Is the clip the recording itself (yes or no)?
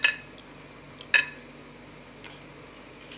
yes